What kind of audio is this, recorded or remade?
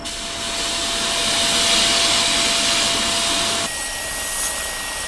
recorded